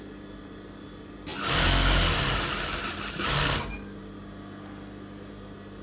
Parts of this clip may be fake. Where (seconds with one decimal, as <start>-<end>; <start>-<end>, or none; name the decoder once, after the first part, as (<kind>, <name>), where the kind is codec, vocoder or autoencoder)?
none